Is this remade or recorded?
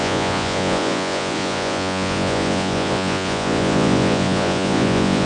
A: remade